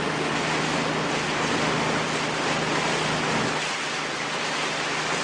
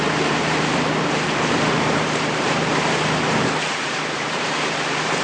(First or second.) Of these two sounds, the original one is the first